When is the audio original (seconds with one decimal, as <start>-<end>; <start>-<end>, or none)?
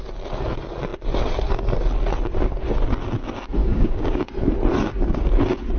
0.0-3.6; 4.2-5.8